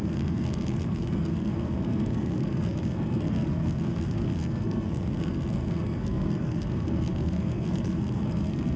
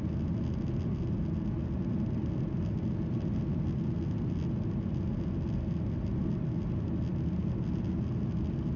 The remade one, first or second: first